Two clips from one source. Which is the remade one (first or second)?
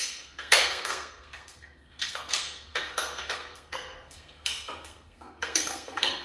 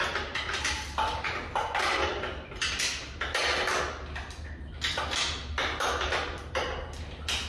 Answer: first